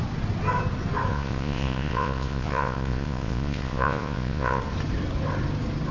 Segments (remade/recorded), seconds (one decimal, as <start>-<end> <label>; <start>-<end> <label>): 0.0-1.1 recorded; 1.1-4.6 remade; 4.6-5.9 recorded